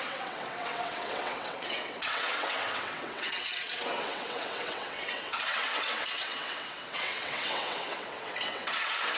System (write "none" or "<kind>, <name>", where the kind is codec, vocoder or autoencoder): vocoder, WaveNeXt